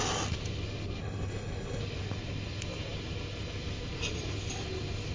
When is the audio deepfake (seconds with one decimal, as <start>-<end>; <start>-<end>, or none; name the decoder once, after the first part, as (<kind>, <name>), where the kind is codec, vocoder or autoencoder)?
1.0-1.8 (codec, HILCodec)